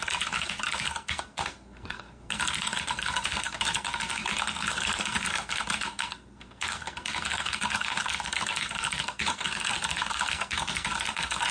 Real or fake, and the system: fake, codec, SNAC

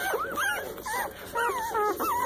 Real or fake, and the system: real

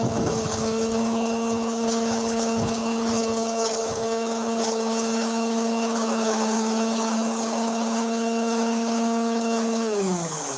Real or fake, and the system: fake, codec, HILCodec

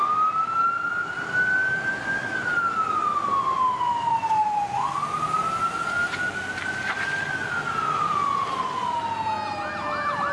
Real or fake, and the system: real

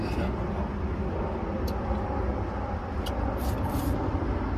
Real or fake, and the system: real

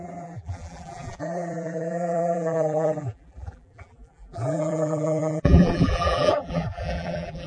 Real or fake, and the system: fake, vocoder, BigVGAN v2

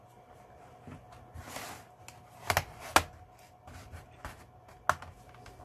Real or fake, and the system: real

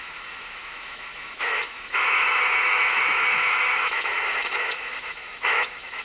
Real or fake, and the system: fake, autoencoder, DAC-VAE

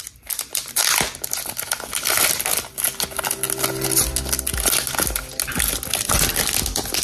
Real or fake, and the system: real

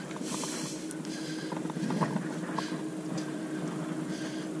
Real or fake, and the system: real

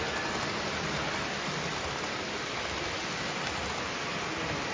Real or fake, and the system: real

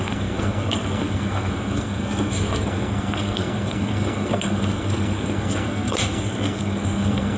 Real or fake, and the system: fake, codec, SNAC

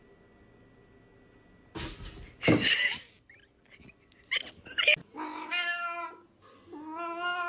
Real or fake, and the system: real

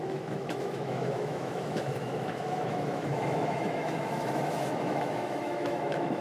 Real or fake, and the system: fake, autoencoder, DAC-VAE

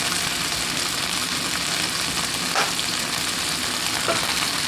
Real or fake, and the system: real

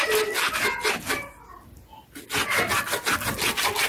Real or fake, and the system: real